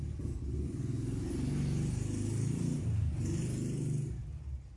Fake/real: real